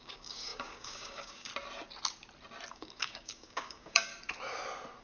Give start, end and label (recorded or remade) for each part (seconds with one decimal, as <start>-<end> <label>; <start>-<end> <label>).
0.0-1.5 remade; 1.5-2.7 recorded; 2.7-4.1 remade; 4.1-5.0 recorded